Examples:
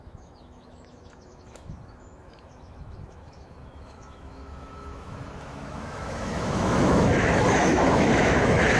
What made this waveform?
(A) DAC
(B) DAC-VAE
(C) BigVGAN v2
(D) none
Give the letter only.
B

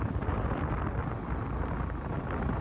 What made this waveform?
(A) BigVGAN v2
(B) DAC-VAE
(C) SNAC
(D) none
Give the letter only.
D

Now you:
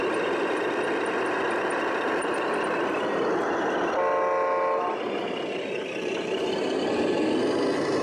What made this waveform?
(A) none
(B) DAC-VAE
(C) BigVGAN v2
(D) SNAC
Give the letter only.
A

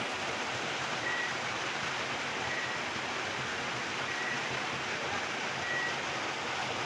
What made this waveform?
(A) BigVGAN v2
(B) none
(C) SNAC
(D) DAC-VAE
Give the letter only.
B